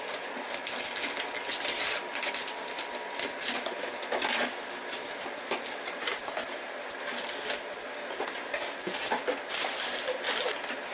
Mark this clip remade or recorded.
recorded